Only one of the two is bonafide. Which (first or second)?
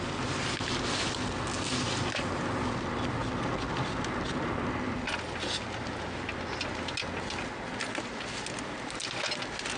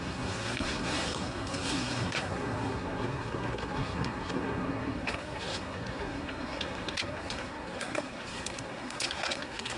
first